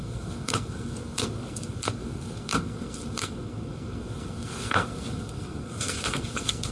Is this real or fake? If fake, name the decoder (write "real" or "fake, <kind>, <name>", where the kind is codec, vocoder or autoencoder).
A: fake, codec, SNAC